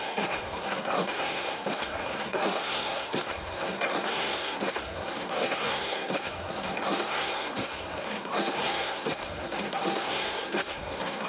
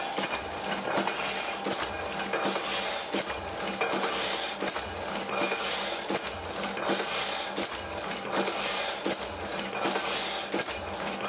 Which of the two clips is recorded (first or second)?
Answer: second